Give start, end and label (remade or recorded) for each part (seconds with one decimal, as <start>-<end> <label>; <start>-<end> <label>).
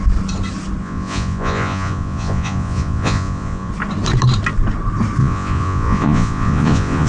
0.0-0.8 recorded; 0.8-3.7 remade; 3.7-5.2 recorded; 5.2-7.1 remade